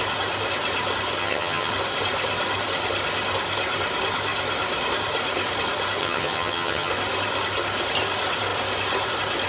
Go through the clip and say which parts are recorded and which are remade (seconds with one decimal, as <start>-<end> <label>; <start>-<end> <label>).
0.0-1.2 recorded; 1.2-1.7 remade; 1.7-6.0 recorded; 6.0-6.9 remade; 6.9-9.5 recorded